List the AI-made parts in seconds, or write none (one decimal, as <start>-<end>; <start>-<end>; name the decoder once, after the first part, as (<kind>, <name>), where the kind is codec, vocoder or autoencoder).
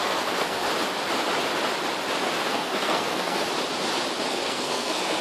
0.0-0.7 (codec, SNAC); 2.5-3.4; 4.3-5.2